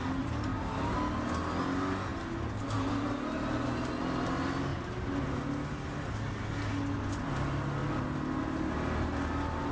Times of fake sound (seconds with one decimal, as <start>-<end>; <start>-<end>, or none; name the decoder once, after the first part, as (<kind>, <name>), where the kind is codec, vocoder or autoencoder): none